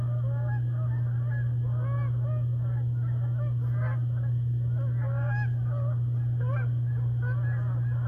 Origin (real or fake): real